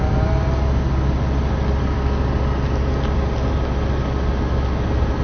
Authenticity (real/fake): real